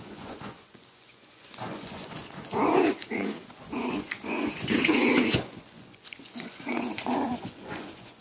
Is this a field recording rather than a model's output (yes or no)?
no